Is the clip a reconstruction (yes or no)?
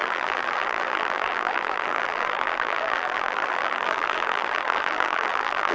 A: yes